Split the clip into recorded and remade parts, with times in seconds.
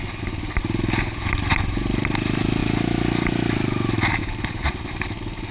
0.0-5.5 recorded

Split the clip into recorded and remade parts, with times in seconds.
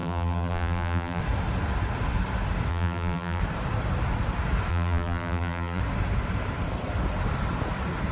0.0-1.2 remade; 1.2-2.7 recorded; 2.7-3.4 remade; 3.4-4.7 recorded; 4.7-5.8 remade; 5.8-8.1 recorded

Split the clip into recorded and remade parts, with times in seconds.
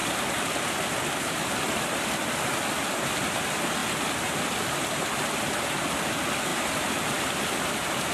0.0-6.5 recorded; 6.5-8.1 remade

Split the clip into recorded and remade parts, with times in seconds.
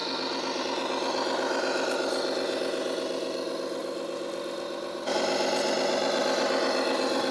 0.0-7.3 recorded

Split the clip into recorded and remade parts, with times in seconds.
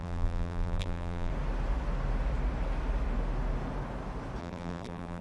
0.0-1.3 remade; 1.3-4.4 recorded; 4.4-5.2 remade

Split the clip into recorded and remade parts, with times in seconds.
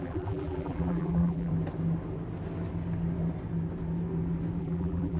0.0-1.5 remade; 1.5-4.6 recorded; 4.6-5.2 remade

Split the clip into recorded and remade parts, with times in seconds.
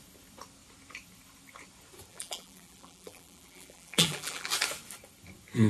0.0-2.1 recorded; 2.1-4.5 remade; 4.5-5.7 recorded